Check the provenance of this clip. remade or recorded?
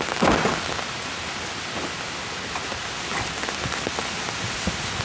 recorded